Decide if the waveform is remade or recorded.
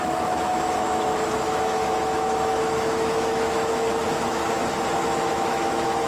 remade